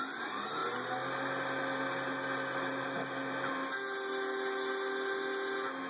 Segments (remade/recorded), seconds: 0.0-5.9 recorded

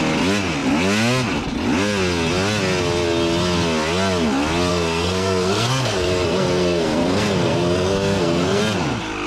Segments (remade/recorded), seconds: 0.0-4.7 recorded; 4.7-8.6 remade; 8.6-9.3 recorded

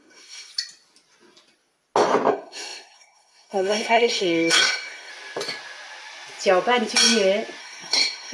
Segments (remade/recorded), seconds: 0.0-0.5 remade; 0.5-2.3 recorded; 2.3-5.1 remade; 5.1-7.6 recorded; 7.6-8.3 remade

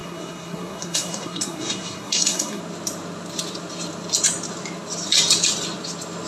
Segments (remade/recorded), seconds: 0.0-2.6 remade; 2.6-6.3 recorded

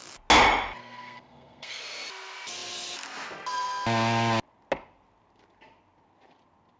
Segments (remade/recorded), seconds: 0.0-0.8 recorded; 0.8-1.8 remade; 1.8-6.8 recorded

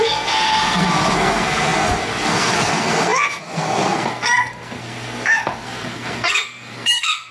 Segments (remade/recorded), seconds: 0.0-7.3 remade

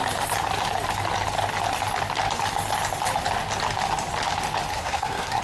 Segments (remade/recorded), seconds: 0.0-4.7 recorded; 4.7-5.4 remade

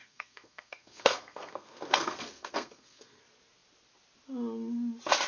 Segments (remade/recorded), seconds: 0.0-3.2 remade; 3.2-5.3 recorded